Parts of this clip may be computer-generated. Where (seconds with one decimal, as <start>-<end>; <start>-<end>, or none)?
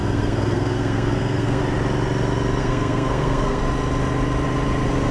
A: 0.0-1.6; 2.6-3.6